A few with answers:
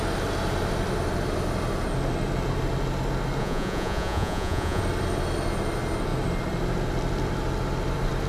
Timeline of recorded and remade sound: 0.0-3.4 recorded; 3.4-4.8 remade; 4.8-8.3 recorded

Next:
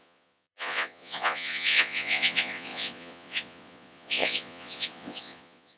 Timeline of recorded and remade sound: 0.0-5.8 remade

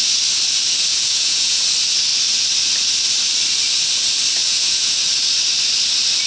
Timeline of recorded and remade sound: 0.0-0.9 recorded; 0.9-1.6 remade; 1.6-4.4 recorded; 4.4-5.0 remade; 5.0-6.3 recorded

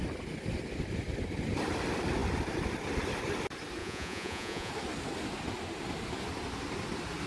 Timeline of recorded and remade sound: 0.0-3.8 recorded; 3.8-4.7 remade; 4.7-7.3 recorded

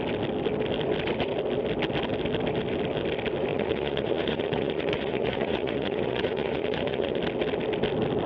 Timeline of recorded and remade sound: 0.0-3.5 recorded; 3.5-7.2 remade; 7.2-8.3 recorded

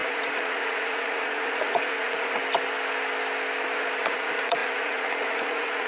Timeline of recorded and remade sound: 0.0-2.4 remade; 2.4-4.0 recorded; 4.0-5.9 remade